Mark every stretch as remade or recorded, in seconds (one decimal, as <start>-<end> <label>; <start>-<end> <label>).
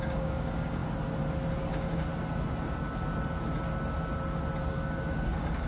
0.0-0.8 remade; 0.8-1.7 recorded; 1.7-2.1 remade; 2.1-4.6 recorded; 4.6-5.7 remade